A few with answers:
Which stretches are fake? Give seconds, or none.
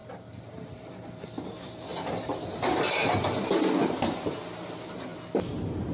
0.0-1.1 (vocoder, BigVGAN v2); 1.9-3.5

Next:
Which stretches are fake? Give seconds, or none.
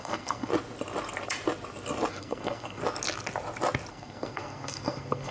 0.0-0.5 (codec, SNAC); 2.1-2.8; 3.9-5.3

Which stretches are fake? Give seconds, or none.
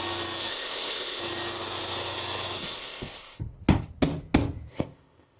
0.5-1.2 (codec, ZipCodec); 2.6-3.4; 4.7-5.4